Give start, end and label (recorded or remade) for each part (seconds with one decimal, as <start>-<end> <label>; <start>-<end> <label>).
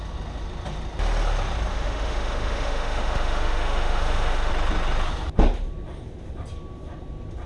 0.0-1.7 recorded; 1.7-4.5 remade; 4.5-7.5 recorded